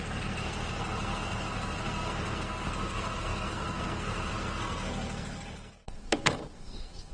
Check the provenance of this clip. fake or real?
fake